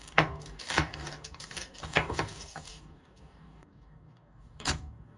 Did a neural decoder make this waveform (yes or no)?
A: yes